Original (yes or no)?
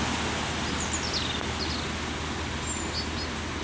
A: yes